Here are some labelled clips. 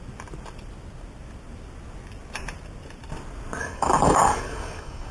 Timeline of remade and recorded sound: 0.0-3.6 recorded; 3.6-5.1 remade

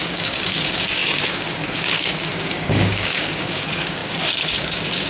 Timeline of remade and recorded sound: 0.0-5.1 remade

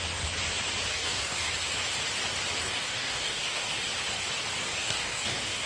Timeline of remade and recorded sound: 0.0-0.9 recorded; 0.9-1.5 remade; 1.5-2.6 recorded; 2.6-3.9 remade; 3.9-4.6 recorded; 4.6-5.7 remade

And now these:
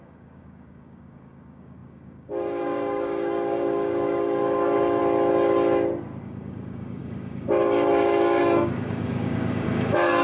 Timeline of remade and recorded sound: 0.0-5.0 remade; 5.0-6.2 recorded; 6.2-10.2 remade